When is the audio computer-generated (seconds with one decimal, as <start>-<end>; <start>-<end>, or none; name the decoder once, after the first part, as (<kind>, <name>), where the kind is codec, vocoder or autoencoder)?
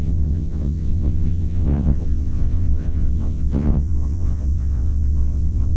0.0-5.8 (vocoder, WaveNeXt)